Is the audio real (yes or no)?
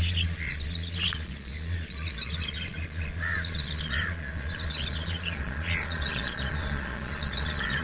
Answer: no